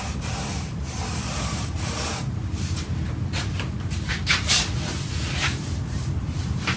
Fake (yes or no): yes